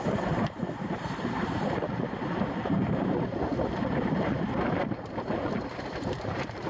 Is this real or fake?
fake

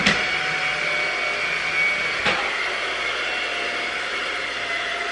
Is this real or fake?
real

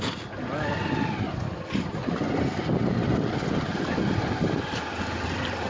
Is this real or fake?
real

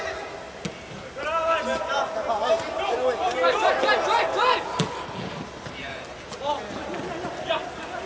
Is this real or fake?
real